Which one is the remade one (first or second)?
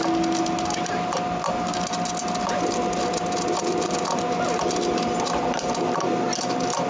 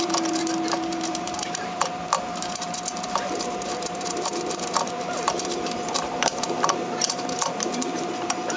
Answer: second